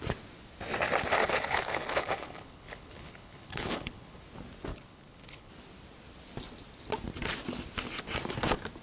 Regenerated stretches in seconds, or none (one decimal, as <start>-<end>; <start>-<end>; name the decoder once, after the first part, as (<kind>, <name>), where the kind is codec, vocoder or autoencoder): 1.2-4.2 (codec, HILCodec); 4.7-5.5